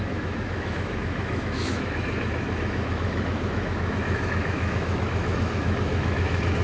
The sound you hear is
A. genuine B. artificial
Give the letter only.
B